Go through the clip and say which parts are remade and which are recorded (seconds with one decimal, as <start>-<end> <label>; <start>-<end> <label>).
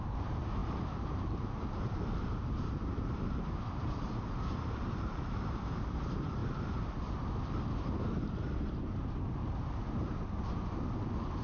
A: 0.0-6.4 remade; 6.4-11.4 recorded